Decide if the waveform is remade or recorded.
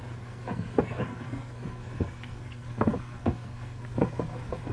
remade